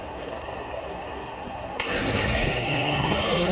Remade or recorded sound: remade